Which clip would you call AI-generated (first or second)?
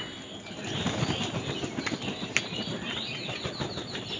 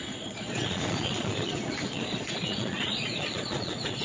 second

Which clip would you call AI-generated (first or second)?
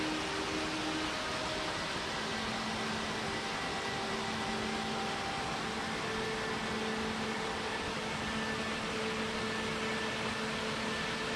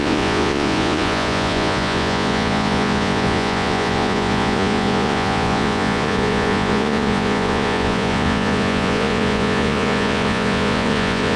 second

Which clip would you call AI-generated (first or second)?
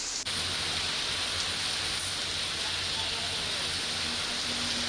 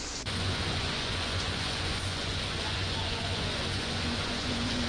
second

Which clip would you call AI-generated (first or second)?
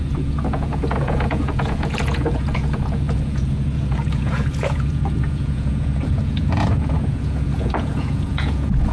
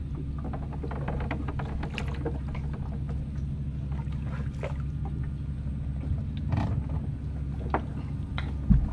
first